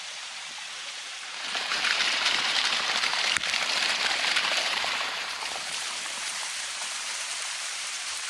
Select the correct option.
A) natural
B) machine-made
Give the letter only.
B